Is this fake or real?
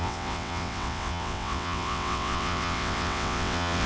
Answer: fake